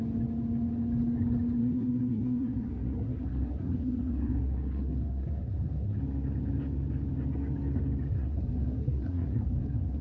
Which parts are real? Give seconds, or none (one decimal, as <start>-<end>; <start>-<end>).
0.0-1.6; 6.0-8.1